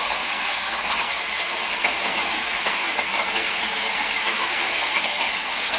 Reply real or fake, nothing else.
fake